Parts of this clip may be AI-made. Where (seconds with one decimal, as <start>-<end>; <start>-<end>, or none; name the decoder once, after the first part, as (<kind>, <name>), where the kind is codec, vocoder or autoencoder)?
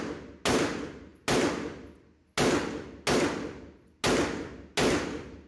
none